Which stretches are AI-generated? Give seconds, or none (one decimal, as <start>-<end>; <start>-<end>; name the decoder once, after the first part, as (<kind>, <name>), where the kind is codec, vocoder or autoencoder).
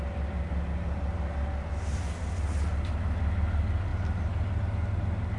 none